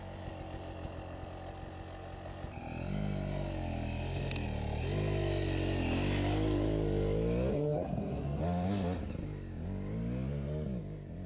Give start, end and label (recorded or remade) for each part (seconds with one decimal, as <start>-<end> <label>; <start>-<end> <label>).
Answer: 0.0-7.5 recorded; 7.5-8.4 remade; 8.4-11.3 recorded